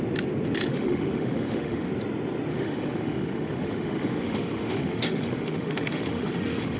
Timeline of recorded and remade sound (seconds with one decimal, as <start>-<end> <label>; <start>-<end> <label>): 0.0-0.7 recorded; 0.7-1.9 remade; 1.9-2.5 recorded; 2.5-6.8 remade